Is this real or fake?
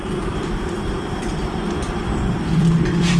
fake